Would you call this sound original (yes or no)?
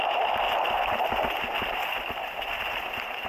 yes